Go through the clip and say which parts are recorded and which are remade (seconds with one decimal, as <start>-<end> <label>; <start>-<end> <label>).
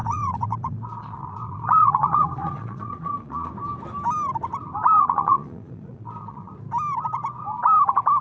0.0-3.5 remade; 3.5-5.0 recorded; 5.0-6.5 remade; 6.5-8.2 recorded